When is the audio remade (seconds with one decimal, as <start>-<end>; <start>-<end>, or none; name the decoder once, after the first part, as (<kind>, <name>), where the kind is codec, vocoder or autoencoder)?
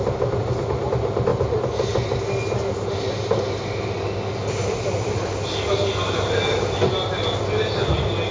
none